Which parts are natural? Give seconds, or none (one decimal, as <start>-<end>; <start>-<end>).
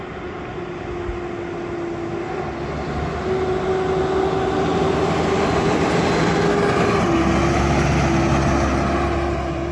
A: 0.0-4.7; 6.5-9.7